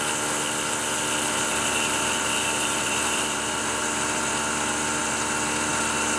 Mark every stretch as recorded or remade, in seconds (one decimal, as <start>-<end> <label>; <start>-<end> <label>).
0.0-1.5 recorded; 1.5-4.3 remade; 4.3-6.2 recorded